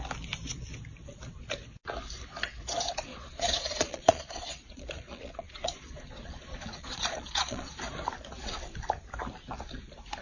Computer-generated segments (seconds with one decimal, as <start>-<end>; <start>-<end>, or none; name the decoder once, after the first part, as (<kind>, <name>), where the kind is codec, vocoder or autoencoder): 3.1-7.8 (vocoder, Vocos)